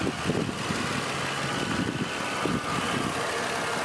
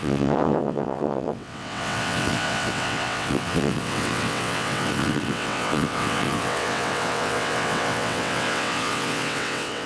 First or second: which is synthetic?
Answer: second